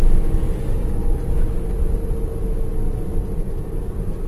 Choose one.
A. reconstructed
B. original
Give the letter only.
B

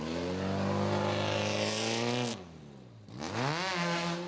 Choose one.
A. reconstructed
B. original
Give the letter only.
B